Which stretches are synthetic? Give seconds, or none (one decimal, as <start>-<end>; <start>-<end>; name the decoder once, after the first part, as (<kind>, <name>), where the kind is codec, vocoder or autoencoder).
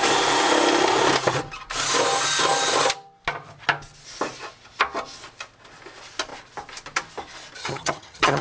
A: 7.6-8.4 (vocoder, HiFi-GAN)